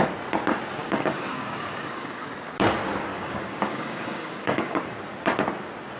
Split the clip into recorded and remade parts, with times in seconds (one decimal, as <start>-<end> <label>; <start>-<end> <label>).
0.0-0.8 recorded; 0.8-2.2 remade; 2.2-3.1 recorded; 3.1-4.8 remade; 4.8-6.0 recorded